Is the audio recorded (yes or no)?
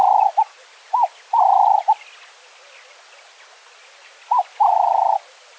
yes